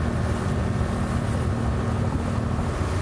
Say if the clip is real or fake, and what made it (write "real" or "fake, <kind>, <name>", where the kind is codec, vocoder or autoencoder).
real